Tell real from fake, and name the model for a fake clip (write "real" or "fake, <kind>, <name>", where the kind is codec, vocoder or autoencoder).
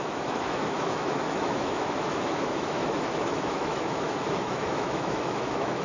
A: fake, autoencoder, DAC-VAE